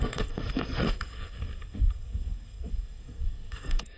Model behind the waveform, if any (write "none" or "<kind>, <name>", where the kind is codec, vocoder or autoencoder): codec, SNAC